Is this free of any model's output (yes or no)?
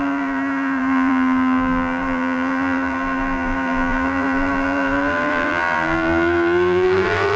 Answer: no